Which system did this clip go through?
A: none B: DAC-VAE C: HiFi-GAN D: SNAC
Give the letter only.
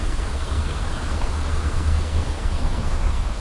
D